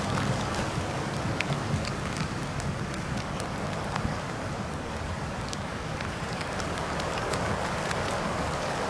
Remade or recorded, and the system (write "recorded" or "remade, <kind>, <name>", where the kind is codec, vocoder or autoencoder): remade, codec, DAC